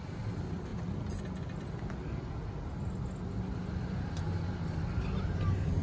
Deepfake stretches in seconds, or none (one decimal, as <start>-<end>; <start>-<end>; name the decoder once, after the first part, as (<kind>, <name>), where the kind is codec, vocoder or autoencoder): none